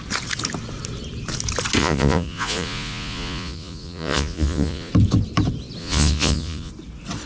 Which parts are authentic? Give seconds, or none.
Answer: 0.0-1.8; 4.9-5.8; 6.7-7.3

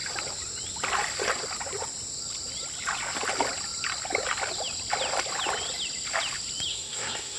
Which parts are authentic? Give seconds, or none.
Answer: 0.0-6.7

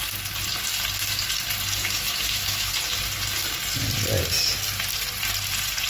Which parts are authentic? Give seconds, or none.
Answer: 0.0-1.8; 2.7-5.9

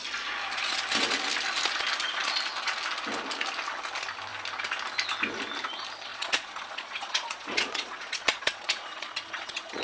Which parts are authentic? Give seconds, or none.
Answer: 0.0-6.1